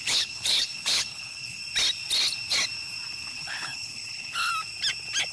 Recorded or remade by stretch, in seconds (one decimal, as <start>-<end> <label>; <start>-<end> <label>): 0.0-1.6 remade; 1.6-3.3 recorded; 3.3-4.5 remade; 4.5-5.3 recorded